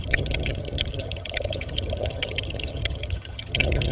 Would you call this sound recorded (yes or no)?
no